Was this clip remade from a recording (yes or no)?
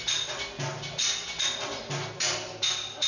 no